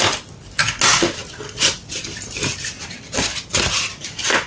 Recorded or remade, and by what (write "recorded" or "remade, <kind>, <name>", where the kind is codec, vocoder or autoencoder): recorded